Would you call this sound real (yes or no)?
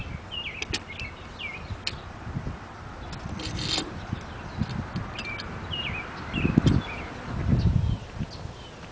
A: yes